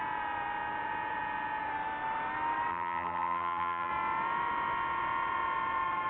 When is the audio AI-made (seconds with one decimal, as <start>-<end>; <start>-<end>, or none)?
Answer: 2.7-3.9